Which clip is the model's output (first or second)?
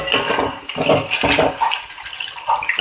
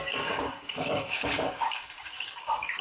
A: second